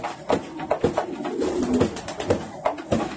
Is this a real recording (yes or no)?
yes